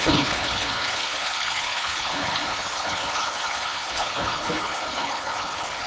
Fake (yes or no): yes